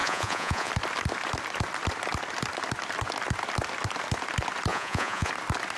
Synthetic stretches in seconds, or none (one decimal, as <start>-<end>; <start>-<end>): 0.0-0.7; 4.7-5.3